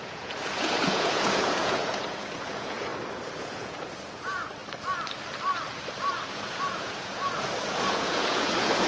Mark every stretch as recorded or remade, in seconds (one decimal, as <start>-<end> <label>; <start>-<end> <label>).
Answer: 0.0-2.9 remade; 2.9-3.4 recorded; 3.4-4.6 remade; 4.6-6.3 recorded; 6.3-8.9 remade